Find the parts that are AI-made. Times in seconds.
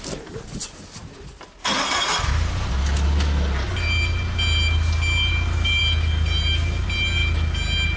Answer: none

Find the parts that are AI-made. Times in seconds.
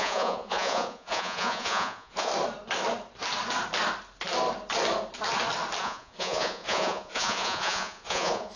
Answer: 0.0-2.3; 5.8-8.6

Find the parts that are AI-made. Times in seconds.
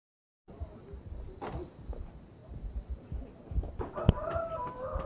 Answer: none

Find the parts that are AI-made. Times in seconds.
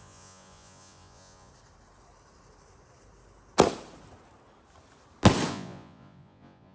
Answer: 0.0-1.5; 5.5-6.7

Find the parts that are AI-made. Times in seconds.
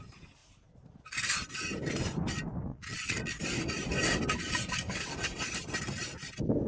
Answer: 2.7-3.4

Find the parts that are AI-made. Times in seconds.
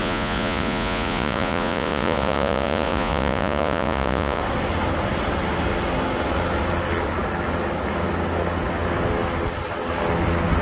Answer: 0.0-4.4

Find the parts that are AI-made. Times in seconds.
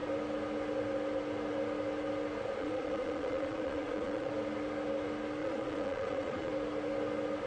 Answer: 2.6-4.3; 5.4-6.5